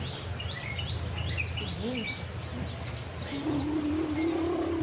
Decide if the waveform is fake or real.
real